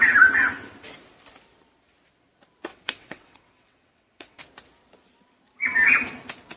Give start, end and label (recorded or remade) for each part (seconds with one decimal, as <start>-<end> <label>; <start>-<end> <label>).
0.0-2.7 recorded; 2.7-4.4 remade; 4.4-6.6 recorded